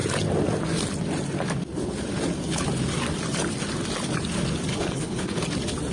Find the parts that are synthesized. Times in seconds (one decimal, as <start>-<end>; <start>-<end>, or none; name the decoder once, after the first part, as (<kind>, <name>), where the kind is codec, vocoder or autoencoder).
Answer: 4.7-5.4 (codec, HILCodec)